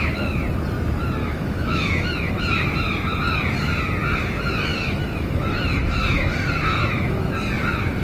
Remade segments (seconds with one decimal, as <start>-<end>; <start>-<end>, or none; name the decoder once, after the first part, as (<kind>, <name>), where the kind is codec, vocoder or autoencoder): 1.2-2.6 (autoencoder, DAC-VAE); 4.7-7.2